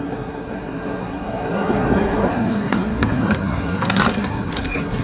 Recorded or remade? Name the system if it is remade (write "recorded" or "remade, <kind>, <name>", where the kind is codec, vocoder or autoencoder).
remade, codec, SNAC